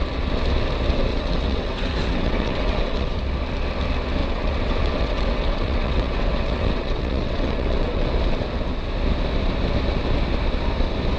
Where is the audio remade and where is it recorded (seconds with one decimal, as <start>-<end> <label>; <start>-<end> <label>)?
0.0-1.1 recorded; 1.1-3.2 remade; 3.2-4.2 recorded; 4.2-8.1 remade; 8.1-11.2 recorded